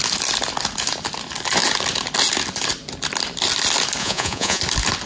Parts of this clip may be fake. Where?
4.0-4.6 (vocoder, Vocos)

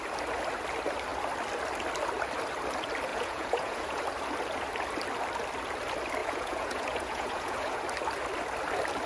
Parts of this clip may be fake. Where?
3.1-4.0 (vocoder, Vocos); 6.2-7.8